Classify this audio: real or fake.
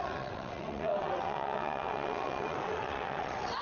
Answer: fake